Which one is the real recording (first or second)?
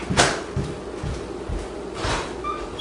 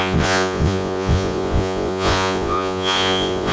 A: first